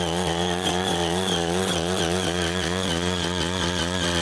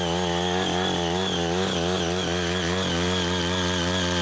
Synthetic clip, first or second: first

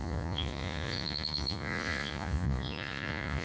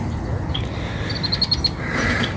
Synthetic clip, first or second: first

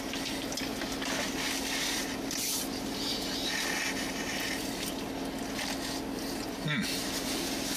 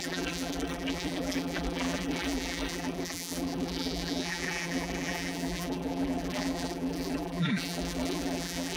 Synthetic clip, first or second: second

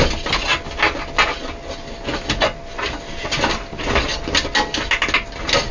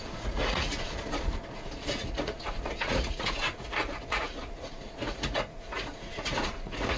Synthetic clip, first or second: second